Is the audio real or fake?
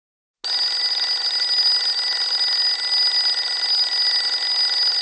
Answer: real